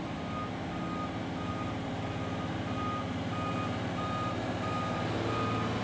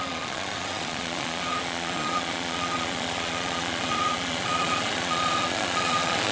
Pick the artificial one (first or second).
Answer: second